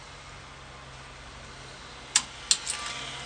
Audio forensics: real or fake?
real